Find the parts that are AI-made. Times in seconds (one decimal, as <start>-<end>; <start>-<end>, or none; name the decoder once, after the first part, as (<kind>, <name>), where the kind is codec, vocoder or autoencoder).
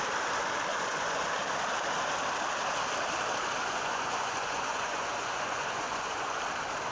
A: 0.7-1.3 (vocoder, Vocos); 3.6-6.4